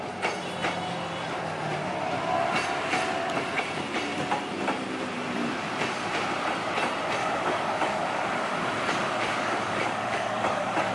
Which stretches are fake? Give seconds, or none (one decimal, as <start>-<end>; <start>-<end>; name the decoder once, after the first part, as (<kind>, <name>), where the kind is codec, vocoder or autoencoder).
7.2-10.9 (codec, DAC)

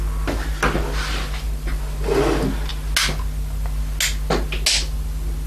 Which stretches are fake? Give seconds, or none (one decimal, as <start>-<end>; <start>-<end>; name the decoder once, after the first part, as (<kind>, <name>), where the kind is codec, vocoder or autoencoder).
none